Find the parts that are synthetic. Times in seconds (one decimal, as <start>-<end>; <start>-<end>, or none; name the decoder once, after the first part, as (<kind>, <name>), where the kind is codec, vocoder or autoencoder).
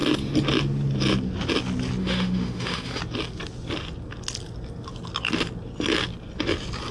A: 2.0-3.0 (autoencoder, DAC-VAE)